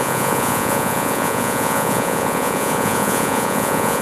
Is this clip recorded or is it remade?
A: remade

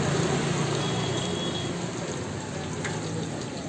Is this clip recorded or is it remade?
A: recorded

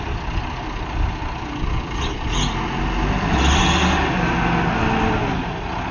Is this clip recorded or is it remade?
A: recorded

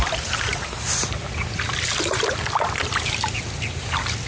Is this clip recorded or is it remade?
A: recorded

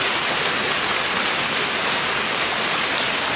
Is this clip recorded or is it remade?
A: recorded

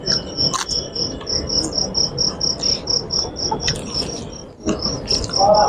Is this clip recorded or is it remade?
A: recorded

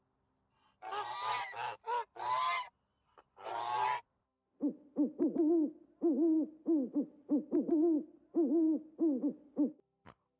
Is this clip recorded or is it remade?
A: recorded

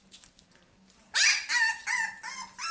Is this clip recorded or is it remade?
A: recorded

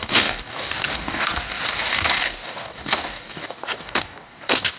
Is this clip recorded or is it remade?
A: remade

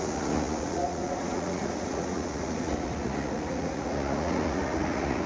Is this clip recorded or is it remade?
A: remade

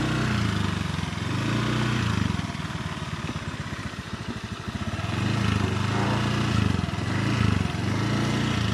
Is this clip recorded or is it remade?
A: recorded